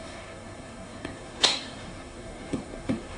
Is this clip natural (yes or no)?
no